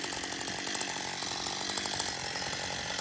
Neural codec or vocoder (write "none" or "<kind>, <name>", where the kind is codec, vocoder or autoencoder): none